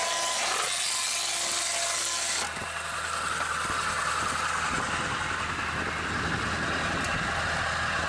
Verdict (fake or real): real